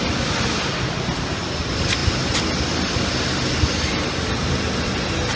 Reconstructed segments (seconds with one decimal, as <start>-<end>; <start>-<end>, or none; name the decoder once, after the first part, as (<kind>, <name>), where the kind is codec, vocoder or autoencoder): none